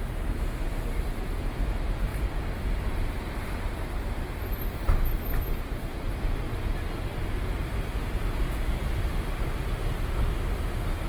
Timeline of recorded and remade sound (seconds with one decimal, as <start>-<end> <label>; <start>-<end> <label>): 0.0-2.1 recorded; 2.1-3.2 remade; 3.2-11.1 recorded